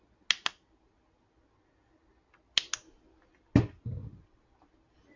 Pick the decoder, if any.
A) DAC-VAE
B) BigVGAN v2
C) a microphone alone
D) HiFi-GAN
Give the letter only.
C